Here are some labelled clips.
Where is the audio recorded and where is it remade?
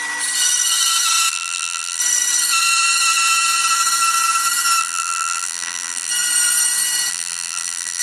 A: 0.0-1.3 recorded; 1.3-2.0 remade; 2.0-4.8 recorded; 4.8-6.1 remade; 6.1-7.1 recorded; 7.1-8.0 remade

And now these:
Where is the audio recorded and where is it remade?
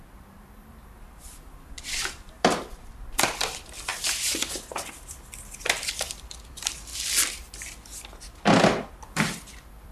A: 0.0-6.9 remade; 6.9-8.9 recorded; 8.9-9.9 remade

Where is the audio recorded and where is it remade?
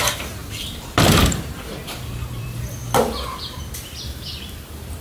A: 0.0-0.4 remade; 0.4-1.0 recorded; 1.0-2.8 remade; 2.8-4.5 recorded; 4.5-5.0 remade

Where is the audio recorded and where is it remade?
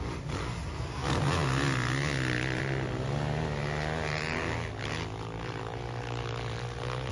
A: 0.0-7.1 recorded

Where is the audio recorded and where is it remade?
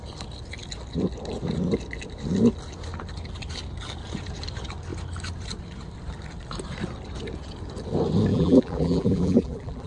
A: 0.0-8.3 recorded; 8.3-9.9 remade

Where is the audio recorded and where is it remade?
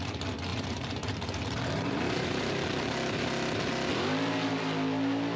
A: 0.0-0.5 recorded; 0.5-3.7 remade; 3.7-5.4 recorded